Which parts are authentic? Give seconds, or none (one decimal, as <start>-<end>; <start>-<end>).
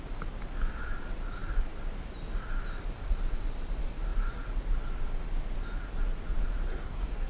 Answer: 0.0-6.7